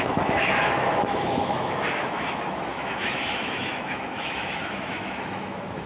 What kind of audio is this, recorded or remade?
remade